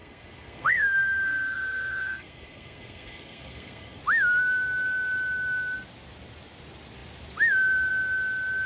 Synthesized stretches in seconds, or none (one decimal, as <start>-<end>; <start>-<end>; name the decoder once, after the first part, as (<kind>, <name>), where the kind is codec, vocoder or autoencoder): 0.0-4.0 (codec, SNAC)